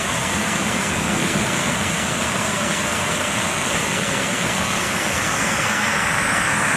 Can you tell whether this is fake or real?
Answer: fake